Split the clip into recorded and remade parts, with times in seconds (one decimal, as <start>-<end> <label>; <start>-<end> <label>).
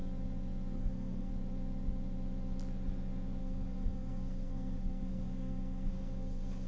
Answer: 0.0-0.8 recorded; 0.8-1.3 remade; 1.3-3.4 recorded; 3.4-6.7 remade